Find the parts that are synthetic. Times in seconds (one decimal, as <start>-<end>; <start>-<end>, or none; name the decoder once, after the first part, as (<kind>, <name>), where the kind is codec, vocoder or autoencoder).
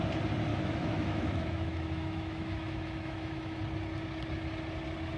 0.5-3.6 (autoencoder, DAC-VAE)